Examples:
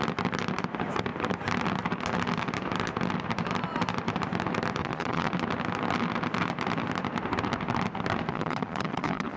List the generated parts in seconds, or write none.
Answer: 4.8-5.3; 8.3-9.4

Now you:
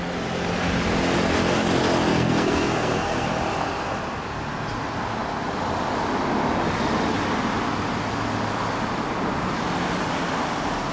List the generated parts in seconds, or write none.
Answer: 2.1-3.3

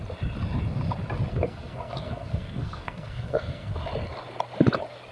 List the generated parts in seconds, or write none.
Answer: 1.3-3.7

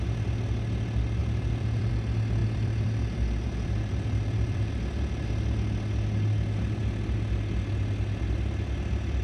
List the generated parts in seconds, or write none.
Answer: 1.2-1.9; 2.4-4.7